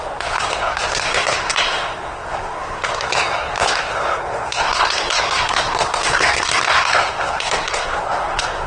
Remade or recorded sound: remade